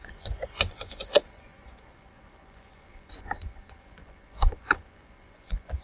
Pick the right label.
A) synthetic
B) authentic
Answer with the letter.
A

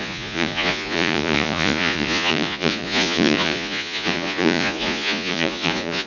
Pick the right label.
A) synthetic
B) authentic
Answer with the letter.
A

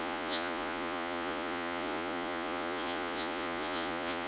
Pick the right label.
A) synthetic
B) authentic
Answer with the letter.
A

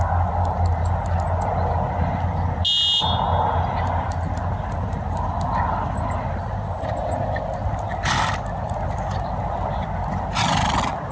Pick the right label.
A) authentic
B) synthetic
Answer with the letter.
A